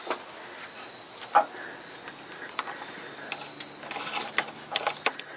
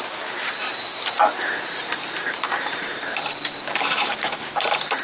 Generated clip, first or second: second